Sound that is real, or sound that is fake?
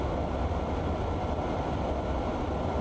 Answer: fake